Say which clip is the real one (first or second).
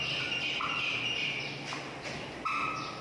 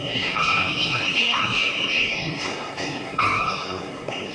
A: first